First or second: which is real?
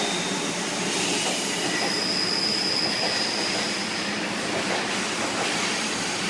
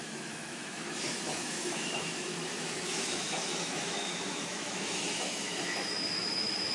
first